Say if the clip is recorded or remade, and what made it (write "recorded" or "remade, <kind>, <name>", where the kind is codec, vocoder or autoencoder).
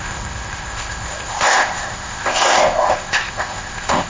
remade, codec, ZipCodec